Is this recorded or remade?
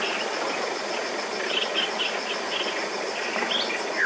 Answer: recorded